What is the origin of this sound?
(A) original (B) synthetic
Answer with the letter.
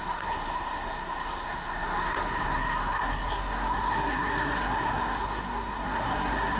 B